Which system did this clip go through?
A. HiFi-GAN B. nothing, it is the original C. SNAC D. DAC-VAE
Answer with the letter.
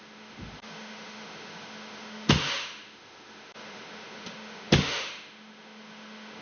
D